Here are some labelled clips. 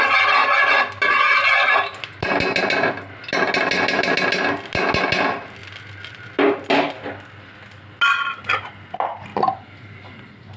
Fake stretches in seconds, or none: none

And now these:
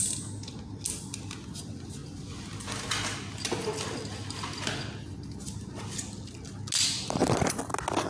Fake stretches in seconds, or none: none

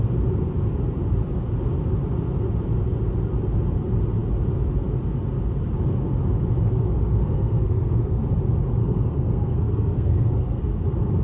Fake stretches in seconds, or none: 7.0-8.2; 8.8-10.6

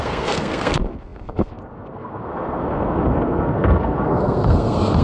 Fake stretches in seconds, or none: 0.0-5.0

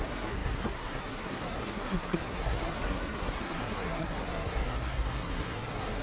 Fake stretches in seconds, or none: 0.0-6.0

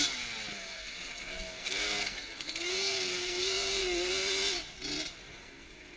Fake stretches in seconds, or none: 0.5-4.1; 5.3-6.0

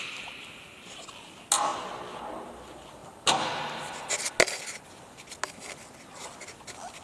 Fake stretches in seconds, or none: none